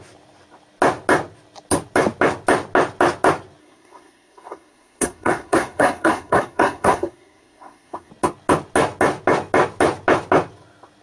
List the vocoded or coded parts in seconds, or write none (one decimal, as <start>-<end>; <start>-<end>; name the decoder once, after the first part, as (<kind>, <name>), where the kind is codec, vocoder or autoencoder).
3.6-8.1 (codec, SNAC)